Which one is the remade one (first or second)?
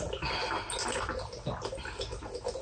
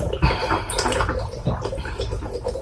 second